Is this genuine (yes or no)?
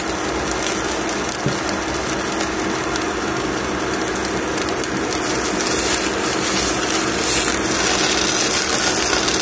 yes